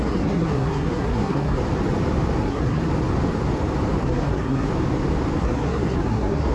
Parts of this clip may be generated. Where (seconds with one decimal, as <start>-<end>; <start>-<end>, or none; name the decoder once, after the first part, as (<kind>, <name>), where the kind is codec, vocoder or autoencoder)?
0.0-1.6 (codec, SNAC); 2.4-2.8; 4.0-4.7; 5.4-6.5

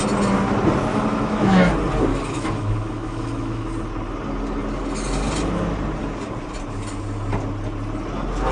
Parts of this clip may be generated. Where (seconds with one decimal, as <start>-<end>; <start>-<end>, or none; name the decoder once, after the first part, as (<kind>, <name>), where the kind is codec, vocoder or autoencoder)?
0.9-1.7 (autoencoder, DAC-VAE); 2.1-3.7

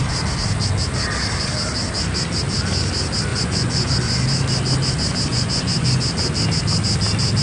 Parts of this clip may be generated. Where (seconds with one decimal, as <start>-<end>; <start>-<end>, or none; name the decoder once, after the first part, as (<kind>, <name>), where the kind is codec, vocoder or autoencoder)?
3.3-3.9 (vocoder, Vocos); 5.3-6.0

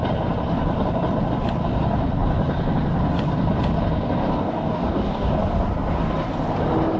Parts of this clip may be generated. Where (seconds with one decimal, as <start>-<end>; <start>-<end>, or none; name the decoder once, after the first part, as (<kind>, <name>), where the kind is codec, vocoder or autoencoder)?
4.2-5.3 (codec, DAC)